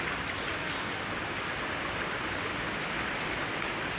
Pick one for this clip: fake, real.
real